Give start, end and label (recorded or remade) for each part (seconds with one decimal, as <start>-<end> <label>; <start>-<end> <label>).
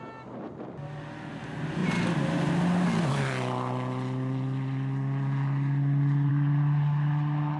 0.0-7.6 recorded